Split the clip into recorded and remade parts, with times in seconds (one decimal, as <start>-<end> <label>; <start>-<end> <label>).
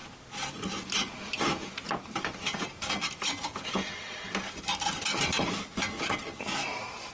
0.0-5.1 recorded; 5.1-5.7 remade; 5.7-7.1 recorded